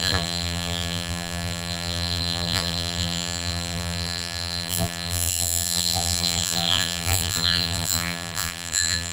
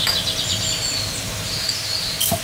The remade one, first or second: first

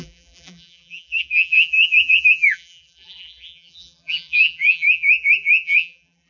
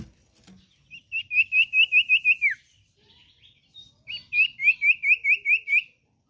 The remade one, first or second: first